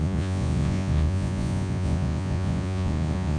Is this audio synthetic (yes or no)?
yes